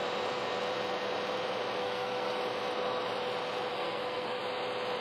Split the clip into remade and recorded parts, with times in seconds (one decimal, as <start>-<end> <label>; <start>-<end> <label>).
0.0-1.8 recorded; 1.8-2.4 remade; 2.4-3.7 recorded; 3.7-4.4 remade; 4.4-5.0 recorded